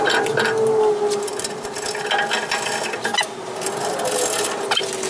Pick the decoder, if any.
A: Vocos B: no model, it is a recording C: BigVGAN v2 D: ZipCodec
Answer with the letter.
B